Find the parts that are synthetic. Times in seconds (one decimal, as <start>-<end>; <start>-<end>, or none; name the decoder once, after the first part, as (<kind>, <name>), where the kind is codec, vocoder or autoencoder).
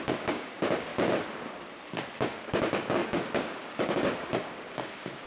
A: 0.0-0.9 (codec, DAC); 2.2-5.3